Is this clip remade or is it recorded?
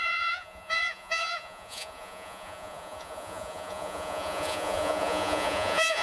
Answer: remade